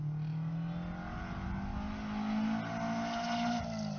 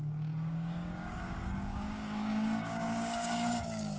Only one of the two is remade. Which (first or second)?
second